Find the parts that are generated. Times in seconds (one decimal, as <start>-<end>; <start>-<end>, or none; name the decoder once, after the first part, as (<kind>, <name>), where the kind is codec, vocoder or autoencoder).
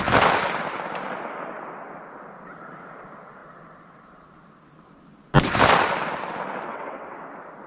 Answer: 6.7-7.2 (vocoder, WaveNeXt)